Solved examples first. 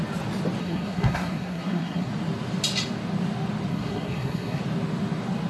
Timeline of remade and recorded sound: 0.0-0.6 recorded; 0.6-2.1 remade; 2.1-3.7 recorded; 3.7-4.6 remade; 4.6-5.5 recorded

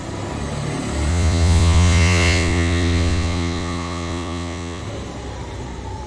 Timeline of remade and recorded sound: 0.0-1.1 recorded; 1.1-4.8 remade; 4.8-6.1 recorded

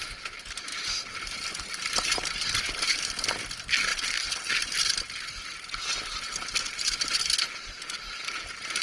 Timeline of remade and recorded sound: 0.0-8.8 recorded

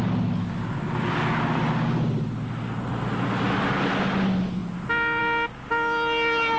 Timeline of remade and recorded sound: 0.0-6.6 recorded

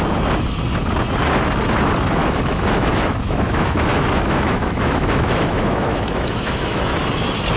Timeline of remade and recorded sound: 0.0-2.2 recorded; 2.2-6.8 remade; 6.8-7.6 recorded

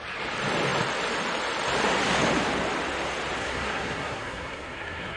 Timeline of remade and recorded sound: 0.0-3.4 recorded; 3.4-5.2 remade